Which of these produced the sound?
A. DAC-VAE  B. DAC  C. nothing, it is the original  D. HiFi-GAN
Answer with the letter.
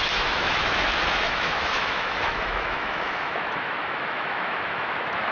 A